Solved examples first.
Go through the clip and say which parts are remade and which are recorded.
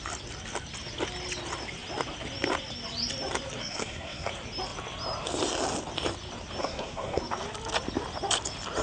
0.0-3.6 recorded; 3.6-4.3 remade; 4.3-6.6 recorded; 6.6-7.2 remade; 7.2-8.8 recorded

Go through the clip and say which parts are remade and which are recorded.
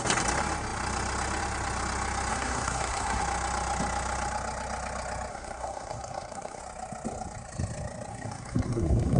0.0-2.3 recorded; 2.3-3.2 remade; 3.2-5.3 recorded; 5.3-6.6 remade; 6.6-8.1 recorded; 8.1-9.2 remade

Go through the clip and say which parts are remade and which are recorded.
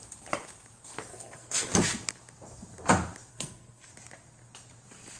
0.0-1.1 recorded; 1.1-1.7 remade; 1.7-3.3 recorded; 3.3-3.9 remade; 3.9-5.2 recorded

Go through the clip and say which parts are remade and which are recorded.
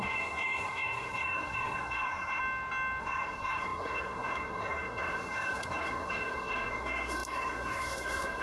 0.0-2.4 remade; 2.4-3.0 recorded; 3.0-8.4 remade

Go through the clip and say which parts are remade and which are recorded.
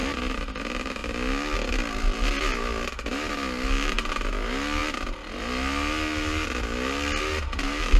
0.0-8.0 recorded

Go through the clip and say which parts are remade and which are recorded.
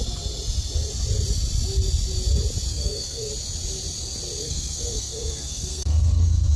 0.0-2.7 recorded; 2.7-3.3 remade; 3.3-4.4 recorded; 4.4-6.6 remade